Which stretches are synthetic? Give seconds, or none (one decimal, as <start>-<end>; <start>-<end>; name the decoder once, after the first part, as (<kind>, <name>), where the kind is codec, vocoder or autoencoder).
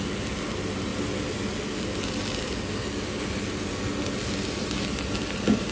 none